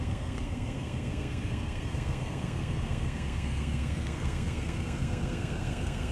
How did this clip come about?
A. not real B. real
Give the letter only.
A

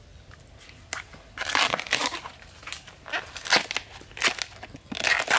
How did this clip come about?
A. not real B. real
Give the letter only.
B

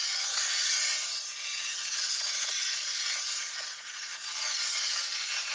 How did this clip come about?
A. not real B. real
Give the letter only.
A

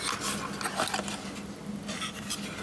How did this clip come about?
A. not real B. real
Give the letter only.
B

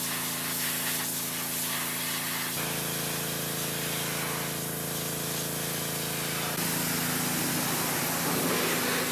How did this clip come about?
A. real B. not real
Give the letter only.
A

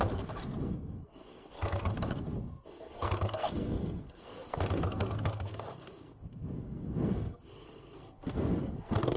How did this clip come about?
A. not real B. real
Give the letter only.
A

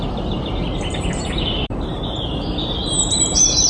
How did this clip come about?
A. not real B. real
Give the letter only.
A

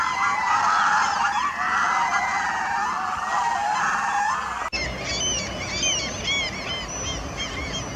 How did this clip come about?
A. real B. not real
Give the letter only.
A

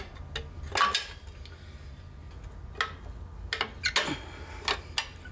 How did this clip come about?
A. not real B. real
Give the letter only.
B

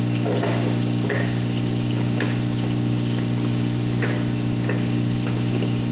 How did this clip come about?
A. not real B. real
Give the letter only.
A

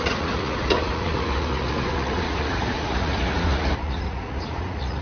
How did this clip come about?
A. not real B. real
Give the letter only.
A